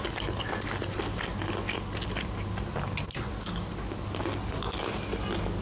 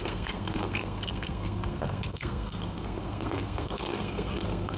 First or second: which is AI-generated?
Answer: second